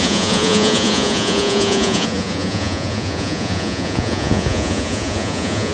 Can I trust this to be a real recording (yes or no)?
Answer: no